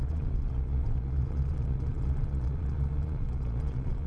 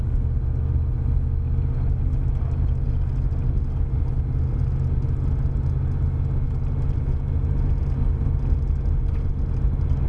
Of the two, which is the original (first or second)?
second